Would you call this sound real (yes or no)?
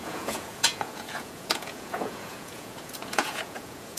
no